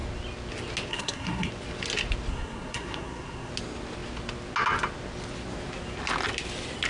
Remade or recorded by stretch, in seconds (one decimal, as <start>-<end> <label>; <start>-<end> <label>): 0.0-0.9 recorded; 0.9-1.5 remade; 1.5-2.3 recorded; 2.3-3.5 remade; 3.5-6.9 recorded